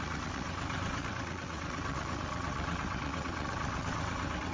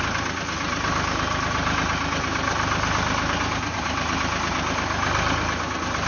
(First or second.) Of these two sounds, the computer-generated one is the first